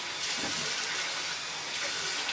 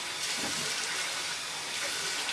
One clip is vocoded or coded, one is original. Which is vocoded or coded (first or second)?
second